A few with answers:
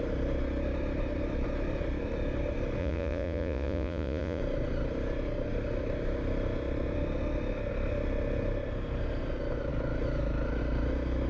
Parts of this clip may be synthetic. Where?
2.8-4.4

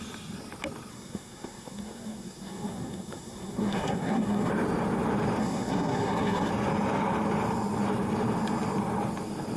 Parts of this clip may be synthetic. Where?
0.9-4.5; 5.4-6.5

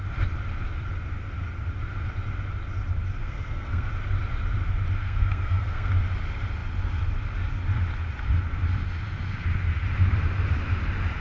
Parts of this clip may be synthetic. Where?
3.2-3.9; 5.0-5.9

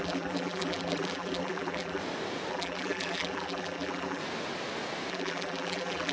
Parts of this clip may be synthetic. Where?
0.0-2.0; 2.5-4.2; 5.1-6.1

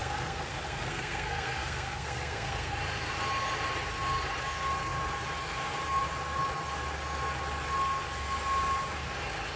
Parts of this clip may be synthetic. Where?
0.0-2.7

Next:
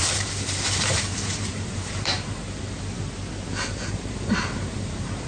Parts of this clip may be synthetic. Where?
0.0-2.8; 3.7-5.3

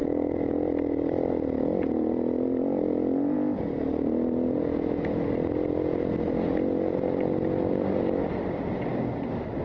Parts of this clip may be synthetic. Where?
none

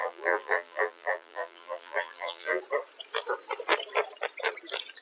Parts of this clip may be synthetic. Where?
0.0-2.6